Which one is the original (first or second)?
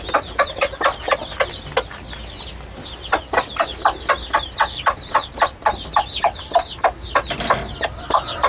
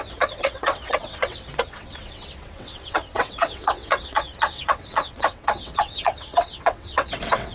first